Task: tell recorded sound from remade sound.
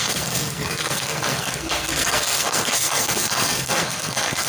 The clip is remade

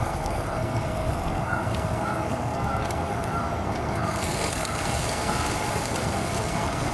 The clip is remade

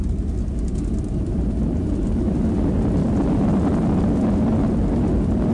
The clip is recorded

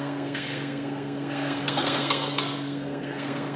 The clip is remade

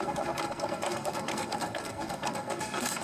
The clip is remade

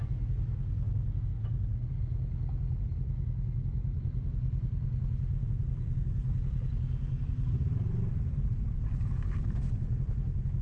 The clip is recorded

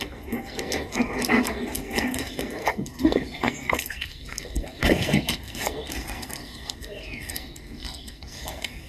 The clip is remade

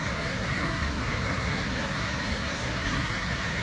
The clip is remade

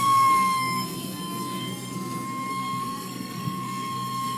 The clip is remade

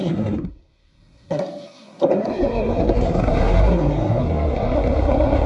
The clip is remade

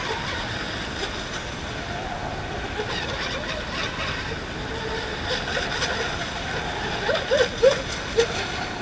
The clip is recorded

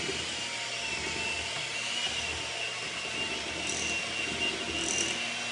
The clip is recorded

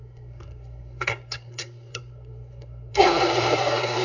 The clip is remade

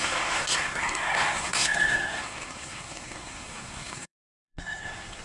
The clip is remade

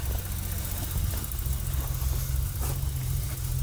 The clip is recorded